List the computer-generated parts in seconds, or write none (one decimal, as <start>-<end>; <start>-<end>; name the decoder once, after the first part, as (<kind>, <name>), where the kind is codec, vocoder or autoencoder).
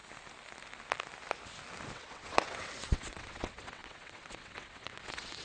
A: 1.9-5.4 (vocoder, WaveNeXt)